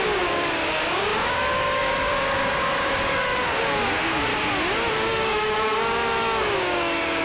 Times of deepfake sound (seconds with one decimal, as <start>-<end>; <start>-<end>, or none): 0.0-4.3; 4.9-7.2